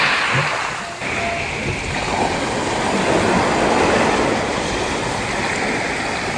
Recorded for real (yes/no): yes